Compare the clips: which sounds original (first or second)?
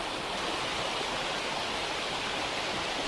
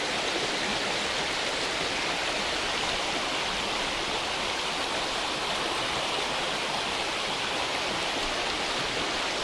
second